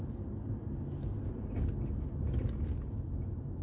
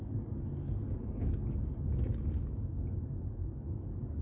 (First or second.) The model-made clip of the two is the second